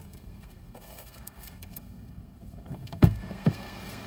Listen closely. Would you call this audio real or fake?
fake